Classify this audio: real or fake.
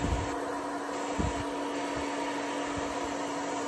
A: real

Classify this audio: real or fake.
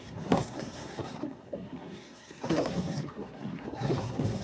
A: fake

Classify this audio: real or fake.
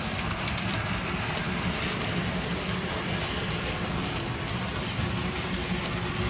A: real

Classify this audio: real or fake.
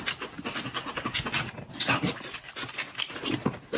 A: real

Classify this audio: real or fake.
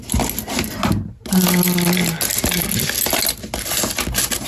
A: real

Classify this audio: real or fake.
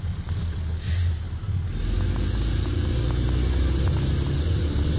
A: real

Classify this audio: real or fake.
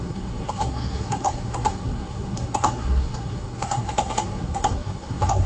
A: fake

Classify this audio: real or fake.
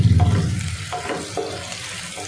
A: real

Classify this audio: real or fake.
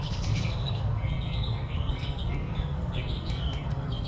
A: fake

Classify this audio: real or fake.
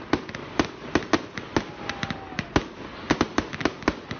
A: real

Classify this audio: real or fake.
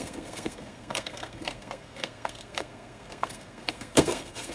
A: fake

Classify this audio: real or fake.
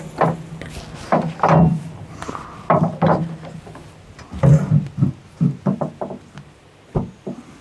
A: real